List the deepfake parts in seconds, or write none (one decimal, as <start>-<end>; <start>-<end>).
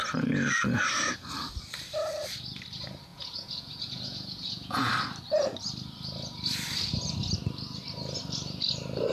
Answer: 3.1-4.9